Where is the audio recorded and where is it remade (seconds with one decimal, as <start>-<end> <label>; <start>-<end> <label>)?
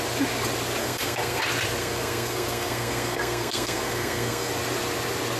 0.0-0.8 recorded; 0.8-1.4 remade; 1.4-1.8 recorded; 1.8-4.5 remade; 4.5-5.4 recorded